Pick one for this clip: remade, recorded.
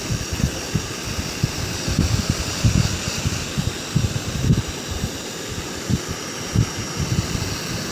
recorded